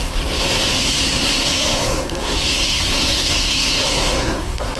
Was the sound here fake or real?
fake